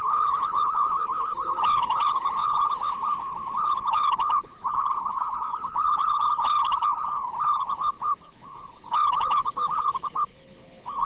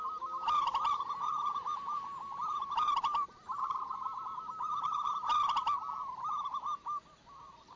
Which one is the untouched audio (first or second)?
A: second